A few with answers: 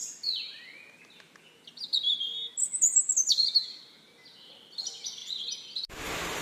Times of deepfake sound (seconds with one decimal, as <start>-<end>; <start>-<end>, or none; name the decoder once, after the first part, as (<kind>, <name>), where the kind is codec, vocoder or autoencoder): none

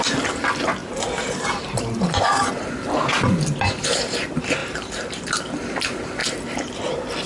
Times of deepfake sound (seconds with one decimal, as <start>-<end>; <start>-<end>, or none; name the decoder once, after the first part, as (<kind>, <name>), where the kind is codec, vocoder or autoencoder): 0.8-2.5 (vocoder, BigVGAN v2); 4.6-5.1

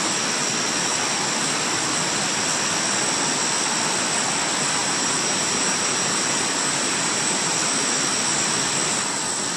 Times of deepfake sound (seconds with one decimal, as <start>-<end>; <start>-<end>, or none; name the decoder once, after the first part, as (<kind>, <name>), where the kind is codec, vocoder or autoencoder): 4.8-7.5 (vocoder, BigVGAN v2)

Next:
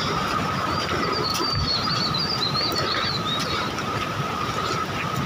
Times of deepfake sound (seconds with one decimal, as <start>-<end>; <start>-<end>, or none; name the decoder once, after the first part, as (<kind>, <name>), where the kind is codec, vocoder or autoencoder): 1.3-4.5 (vocoder, BigVGAN v2)

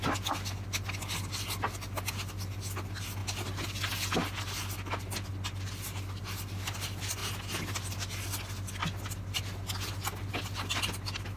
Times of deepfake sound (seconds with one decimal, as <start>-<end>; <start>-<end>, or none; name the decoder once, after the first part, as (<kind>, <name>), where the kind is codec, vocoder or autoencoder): 8.8-10.3 (vocoder, BigVGAN v2)

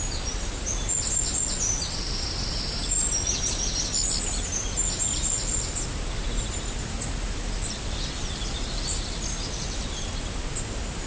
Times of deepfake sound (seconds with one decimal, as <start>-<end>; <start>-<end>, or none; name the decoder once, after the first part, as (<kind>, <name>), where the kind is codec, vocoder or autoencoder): none

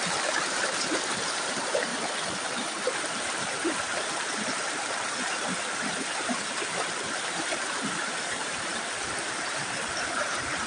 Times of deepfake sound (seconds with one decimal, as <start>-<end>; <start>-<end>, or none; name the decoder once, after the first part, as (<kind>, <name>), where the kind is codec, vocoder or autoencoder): 0.0-1.9 (vocoder, BigVGAN v2); 2.5-10.7

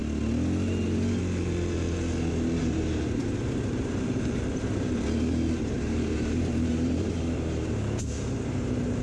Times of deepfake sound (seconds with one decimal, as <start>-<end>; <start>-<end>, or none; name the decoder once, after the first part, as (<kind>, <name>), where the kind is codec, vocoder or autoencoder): 2.6-9.0 (vocoder, BigVGAN v2)